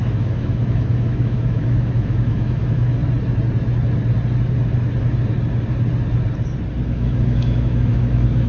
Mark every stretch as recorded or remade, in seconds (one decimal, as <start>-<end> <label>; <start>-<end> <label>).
0.0-3.0 remade; 3.0-6.9 recorded; 6.9-8.5 remade